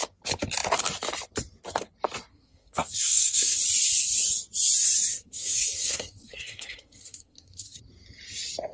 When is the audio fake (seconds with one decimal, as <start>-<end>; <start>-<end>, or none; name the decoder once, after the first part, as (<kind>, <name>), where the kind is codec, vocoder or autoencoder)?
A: 2.3-3.6 (codec, SNAC); 5.1-7.8